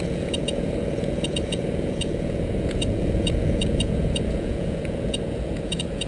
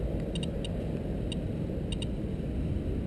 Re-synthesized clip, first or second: first